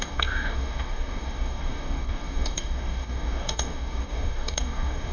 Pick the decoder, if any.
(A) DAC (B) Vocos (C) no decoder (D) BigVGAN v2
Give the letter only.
A